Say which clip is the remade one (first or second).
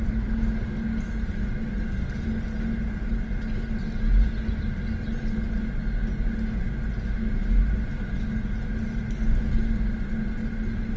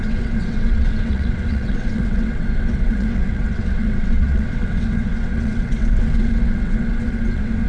second